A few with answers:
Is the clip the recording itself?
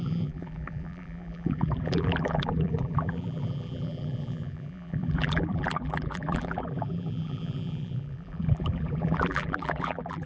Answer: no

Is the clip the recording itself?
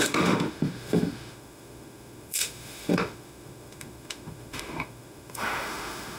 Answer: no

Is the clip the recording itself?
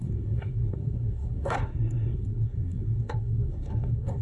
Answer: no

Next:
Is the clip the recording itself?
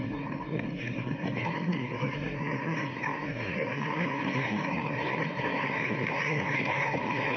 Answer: no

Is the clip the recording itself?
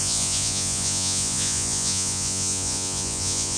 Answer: no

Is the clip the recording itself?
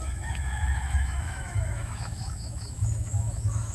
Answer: no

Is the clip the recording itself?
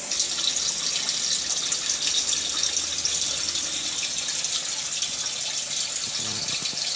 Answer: yes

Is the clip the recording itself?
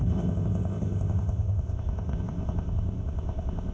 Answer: no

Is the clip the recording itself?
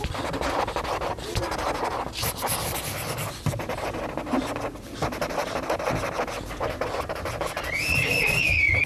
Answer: no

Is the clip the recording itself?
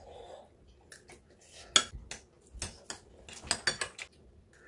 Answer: yes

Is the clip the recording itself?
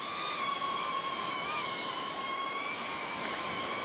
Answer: no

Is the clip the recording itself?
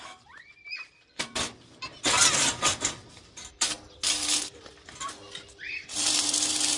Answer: yes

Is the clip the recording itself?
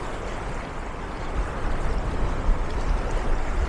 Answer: yes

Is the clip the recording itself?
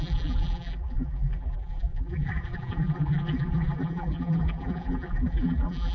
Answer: no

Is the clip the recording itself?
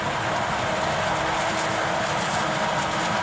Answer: yes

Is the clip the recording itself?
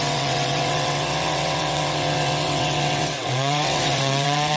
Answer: no